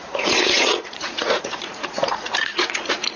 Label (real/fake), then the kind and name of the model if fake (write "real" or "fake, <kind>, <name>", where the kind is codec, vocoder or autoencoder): fake, vocoder, Vocos